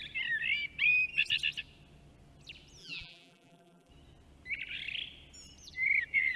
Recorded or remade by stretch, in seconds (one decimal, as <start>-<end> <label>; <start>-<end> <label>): 0.0-2.8 recorded; 2.8-3.9 remade; 3.9-6.4 recorded